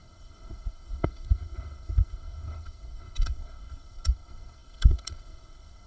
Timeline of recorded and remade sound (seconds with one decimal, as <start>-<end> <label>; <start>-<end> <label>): 0.0-5.9 remade